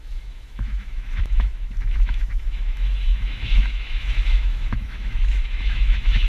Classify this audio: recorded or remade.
remade